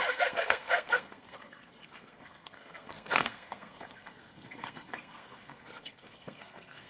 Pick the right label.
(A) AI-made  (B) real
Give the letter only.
A